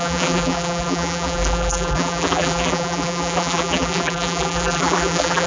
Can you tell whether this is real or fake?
fake